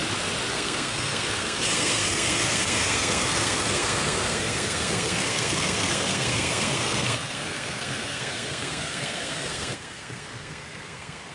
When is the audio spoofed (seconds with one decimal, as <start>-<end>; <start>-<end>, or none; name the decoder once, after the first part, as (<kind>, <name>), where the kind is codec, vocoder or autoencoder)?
0.5-11.3 (codec, SNAC)